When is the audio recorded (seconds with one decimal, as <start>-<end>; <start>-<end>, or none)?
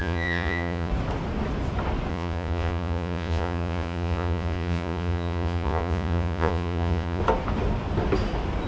0.9-2.1; 7.2-8.7